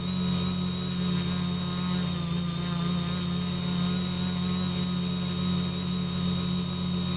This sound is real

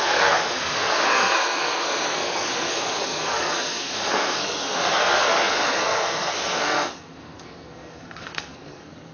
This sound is fake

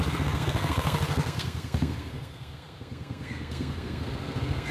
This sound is fake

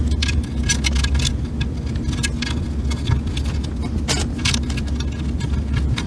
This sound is real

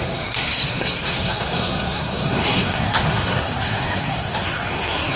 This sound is fake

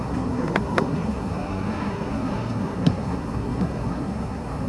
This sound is fake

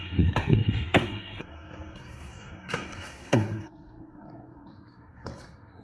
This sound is fake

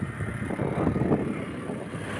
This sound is real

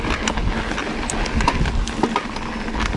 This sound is real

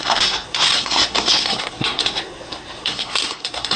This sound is fake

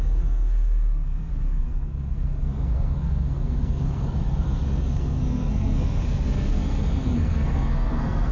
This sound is fake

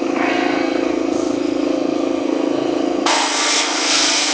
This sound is fake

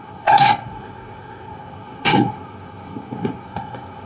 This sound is fake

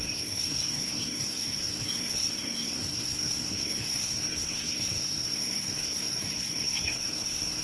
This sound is fake